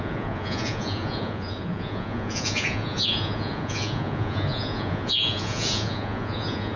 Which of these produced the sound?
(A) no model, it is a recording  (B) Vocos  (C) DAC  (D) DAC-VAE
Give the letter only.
B